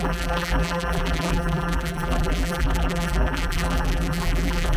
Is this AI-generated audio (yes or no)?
yes